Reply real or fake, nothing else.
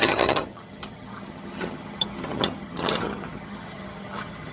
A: fake